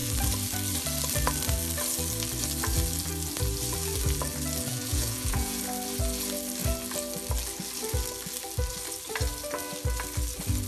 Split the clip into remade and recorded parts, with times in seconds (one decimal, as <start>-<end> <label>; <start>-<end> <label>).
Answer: 0.0-4.7 recorded; 4.7-5.6 remade; 5.6-10.7 recorded